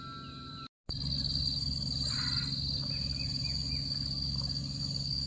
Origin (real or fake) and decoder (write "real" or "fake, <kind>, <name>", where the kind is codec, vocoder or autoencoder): real